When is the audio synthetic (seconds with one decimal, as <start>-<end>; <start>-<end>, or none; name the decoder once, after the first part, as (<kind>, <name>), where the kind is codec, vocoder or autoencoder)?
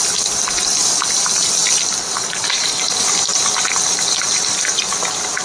none